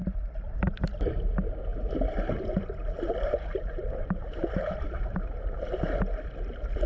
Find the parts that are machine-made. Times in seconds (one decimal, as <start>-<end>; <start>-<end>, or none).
1.7-5.8